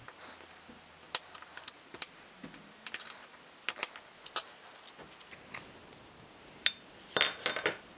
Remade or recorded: recorded